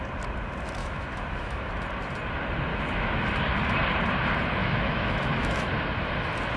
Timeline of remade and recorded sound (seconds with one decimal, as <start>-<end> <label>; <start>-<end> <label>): 0.0-0.8 recorded; 0.8-1.7 remade; 1.7-2.7 recorded; 2.7-3.3 remade; 3.3-4.6 recorded; 4.6-5.7 remade; 5.7-6.6 recorded